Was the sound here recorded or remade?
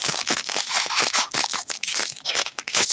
remade